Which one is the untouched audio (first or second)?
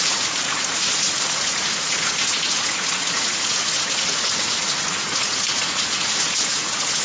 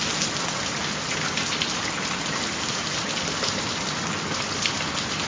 second